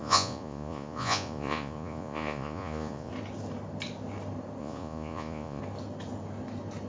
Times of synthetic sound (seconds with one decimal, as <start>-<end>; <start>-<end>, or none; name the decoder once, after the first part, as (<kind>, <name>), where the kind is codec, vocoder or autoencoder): 0.0-3.1 (vocoder, Vocos); 4.6-5.6